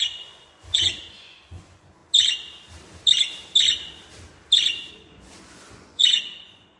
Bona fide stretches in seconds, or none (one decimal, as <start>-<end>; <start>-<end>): 2.0-4.9